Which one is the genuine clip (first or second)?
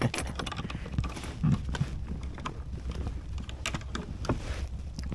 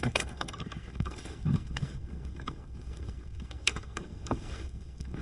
first